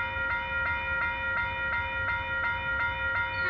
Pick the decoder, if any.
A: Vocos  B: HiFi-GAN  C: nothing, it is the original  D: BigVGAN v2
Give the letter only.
C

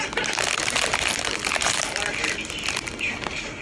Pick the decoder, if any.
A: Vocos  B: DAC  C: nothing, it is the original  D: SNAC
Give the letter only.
C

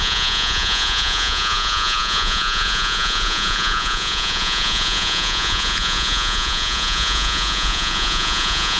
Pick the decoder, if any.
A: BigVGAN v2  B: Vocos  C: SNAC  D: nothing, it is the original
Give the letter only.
B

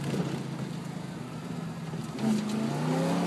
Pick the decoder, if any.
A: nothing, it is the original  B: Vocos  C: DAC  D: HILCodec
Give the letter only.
A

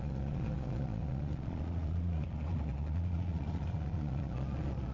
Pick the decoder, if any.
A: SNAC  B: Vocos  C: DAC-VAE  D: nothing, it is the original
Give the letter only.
B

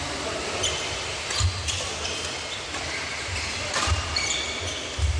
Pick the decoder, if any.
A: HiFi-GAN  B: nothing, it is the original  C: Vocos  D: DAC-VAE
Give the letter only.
B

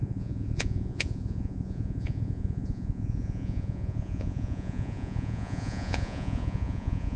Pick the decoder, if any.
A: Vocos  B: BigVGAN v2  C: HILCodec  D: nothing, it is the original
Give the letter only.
A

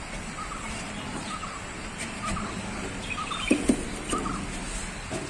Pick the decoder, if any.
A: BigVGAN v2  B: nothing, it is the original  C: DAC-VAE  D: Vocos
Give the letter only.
B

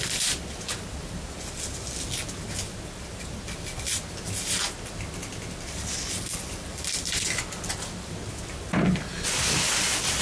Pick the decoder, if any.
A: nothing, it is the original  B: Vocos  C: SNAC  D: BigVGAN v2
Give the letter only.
A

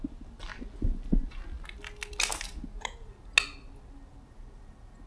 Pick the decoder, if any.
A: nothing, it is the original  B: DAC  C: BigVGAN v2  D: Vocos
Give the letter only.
A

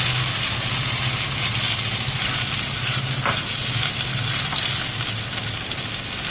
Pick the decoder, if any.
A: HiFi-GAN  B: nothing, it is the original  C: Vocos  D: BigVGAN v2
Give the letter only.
B